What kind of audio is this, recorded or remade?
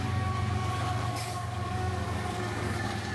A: remade